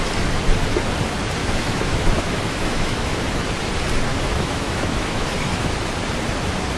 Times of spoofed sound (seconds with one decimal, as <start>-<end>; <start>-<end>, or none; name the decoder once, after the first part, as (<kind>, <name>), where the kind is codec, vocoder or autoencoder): 1.4-3.2 (autoencoder, DAC-VAE); 4.1-5.7